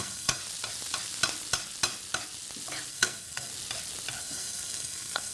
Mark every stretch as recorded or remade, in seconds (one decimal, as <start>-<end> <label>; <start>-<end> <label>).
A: 0.0-0.4 remade; 0.4-2.9 recorded; 2.9-3.5 remade; 3.5-4.2 recorded; 4.2-5.3 remade

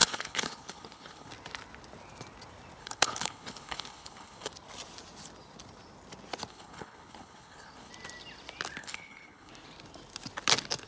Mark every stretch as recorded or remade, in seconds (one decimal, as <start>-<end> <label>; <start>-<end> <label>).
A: 0.0-1.3 remade; 1.3-2.8 recorded; 2.8-4.5 remade; 4.5-6.5 recorded; 6.5-7.9 remade; 7.9-8.8 recorded; 8.8-9.5 remade; 9.5-10.9 recorded